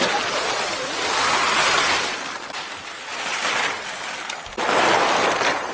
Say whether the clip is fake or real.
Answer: real